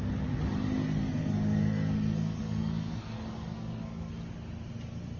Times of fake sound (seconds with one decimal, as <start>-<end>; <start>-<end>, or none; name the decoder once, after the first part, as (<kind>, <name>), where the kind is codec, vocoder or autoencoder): 1.0-4.1 (codec, SNAC)

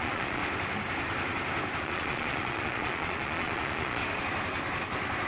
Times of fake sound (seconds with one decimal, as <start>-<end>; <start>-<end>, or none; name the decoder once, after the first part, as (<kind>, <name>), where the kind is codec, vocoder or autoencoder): 0.0-0.4 (vocoder, Vocos); 1.8-4.0

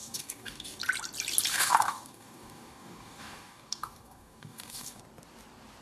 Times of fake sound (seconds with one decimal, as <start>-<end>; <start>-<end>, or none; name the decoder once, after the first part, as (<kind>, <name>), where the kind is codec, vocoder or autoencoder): 0.0-0.8 (codec, DAC); 1.5-5.0

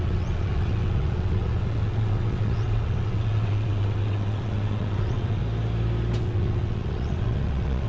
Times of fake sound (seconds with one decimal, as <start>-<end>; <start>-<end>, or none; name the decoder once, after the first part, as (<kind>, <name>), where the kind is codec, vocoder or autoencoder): 0.0-5.4 (vocoder, WaveNeXt); 6.2-7.9